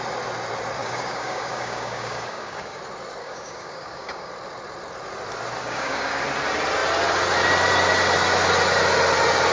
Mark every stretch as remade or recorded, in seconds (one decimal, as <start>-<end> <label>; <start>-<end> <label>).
0.0-0.8 recorded; 0.8-2.8 remade; 2.8-3.2 recorded; 3.2-4.3 remade; 4.3-5.6 recorded; 5.6-6.2 remade; 6.2-9.5 recorded